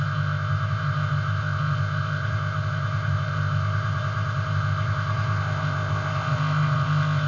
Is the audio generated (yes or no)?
yes